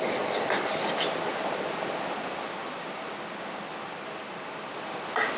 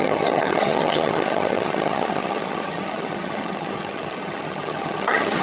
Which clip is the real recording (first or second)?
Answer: first